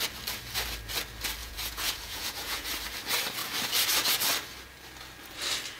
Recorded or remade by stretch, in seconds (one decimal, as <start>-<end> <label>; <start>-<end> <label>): 0.0-1.4 recorded; 1.4-2.7 remade; 2.7-5.8 recorded